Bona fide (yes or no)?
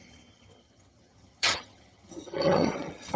no